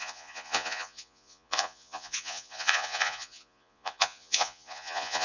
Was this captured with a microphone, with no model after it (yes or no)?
no